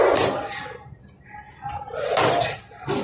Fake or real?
real